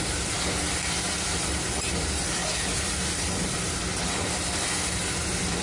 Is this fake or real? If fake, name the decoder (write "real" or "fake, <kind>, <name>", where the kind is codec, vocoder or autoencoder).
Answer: fake, vocoder, BigVGAN v2